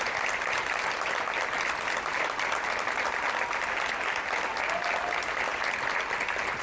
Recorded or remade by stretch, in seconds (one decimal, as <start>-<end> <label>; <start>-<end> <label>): 0.0-6.6 recorded